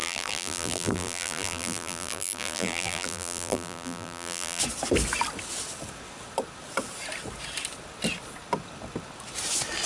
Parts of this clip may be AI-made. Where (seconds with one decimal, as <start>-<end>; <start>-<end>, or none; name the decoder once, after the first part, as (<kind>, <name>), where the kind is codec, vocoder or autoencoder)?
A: 0.0-4.6 (vocoder, BigVGAN v2)